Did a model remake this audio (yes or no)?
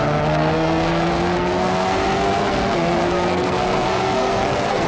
yes